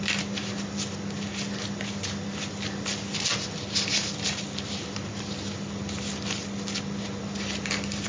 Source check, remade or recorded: recorded